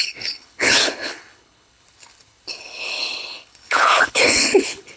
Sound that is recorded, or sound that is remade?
remade